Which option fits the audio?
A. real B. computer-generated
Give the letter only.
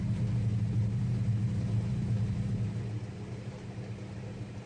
A